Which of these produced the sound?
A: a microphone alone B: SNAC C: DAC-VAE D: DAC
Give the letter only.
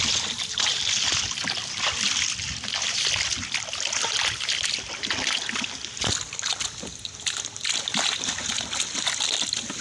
A